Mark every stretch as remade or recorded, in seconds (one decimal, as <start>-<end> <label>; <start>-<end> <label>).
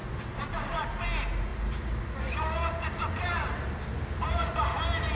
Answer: 0.0-5.1 recorded